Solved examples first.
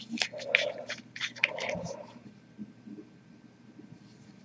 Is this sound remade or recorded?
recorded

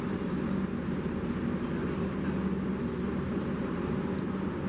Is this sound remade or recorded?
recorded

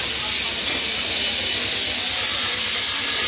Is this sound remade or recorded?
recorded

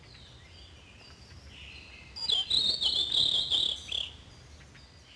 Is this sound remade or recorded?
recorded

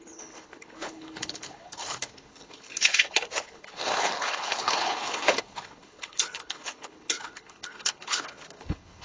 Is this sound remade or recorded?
remade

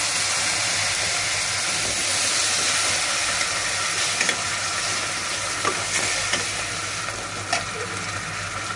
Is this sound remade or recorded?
recorded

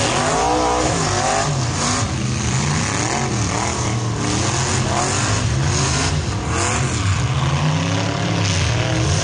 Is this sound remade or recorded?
recorded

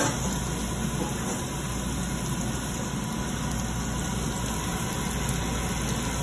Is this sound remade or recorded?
recorded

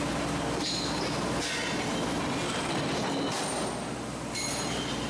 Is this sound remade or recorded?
recorded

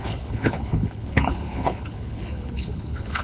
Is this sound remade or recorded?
remade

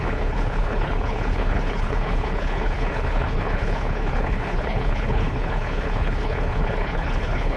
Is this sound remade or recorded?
remade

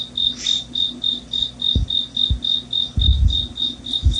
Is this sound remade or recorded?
recorded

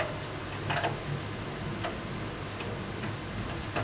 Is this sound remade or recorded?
recorded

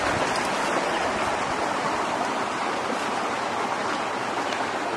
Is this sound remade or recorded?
recorded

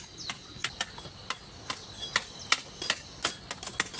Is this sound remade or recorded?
recorded